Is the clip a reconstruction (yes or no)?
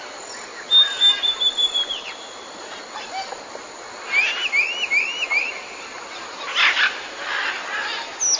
no